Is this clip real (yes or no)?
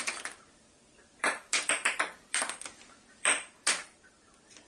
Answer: no